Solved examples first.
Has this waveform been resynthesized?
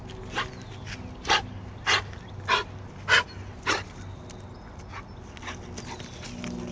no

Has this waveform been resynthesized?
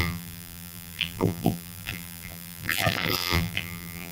yes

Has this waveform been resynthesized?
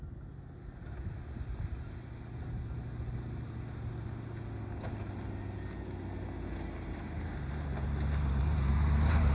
no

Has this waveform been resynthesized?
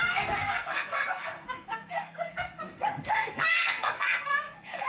yes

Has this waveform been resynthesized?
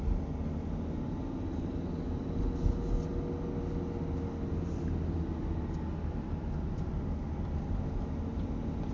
no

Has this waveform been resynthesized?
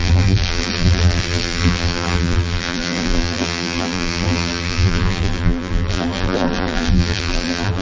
yes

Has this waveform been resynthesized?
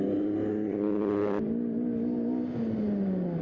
no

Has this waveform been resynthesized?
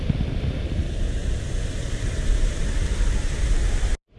no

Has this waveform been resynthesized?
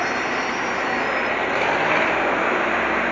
no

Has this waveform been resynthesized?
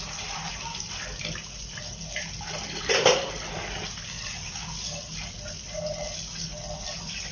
yes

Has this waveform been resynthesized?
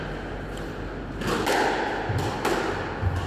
no